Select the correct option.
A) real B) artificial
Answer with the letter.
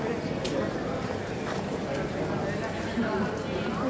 A